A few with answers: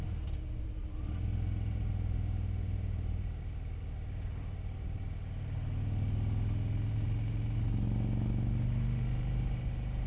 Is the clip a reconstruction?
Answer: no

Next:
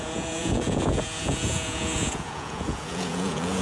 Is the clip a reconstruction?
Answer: yes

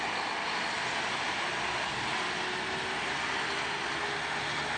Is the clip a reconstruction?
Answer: no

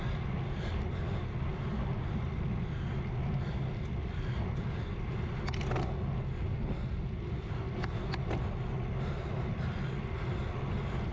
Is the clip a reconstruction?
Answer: no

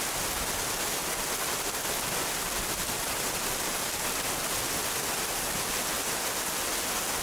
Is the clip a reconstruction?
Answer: no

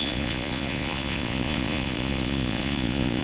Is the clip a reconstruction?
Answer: yes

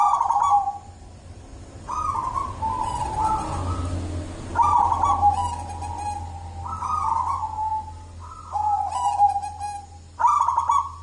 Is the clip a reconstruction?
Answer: no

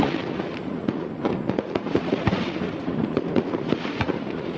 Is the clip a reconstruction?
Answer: yes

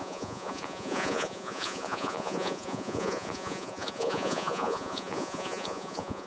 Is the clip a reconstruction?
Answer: yes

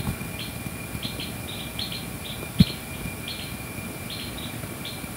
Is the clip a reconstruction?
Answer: no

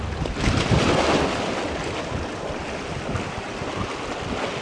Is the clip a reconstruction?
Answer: no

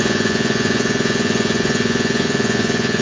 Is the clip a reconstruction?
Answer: yes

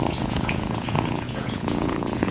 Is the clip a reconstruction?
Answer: yes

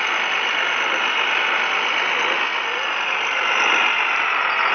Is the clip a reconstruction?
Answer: no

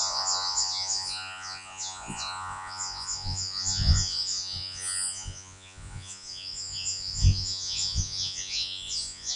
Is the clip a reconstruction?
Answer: yes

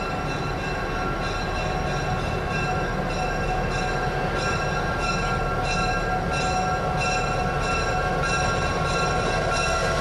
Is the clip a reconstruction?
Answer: no